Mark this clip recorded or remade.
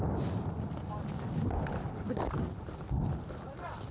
recorded